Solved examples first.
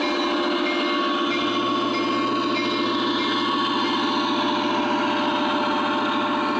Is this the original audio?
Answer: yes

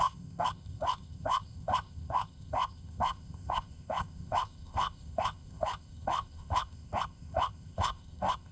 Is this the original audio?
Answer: no